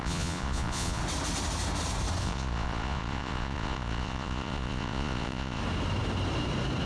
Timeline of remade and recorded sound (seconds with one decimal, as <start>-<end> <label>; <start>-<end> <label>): 0.0-1.0 remade; 1.0-2.2 recorded; 2.2-5.6 remade; 5.6-6.9 recorded